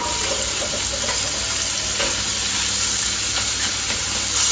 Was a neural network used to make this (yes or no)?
no